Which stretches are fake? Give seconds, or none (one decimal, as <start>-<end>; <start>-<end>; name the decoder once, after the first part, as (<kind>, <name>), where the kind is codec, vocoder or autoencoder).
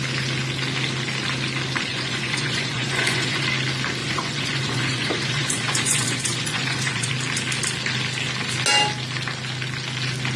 1.9-3.4 (vocoder, Vocos); 4.0-7.1